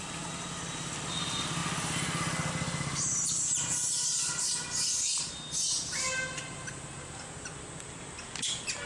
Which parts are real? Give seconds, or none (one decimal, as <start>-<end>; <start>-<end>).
0.0-8.9